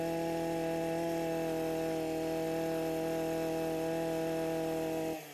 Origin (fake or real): real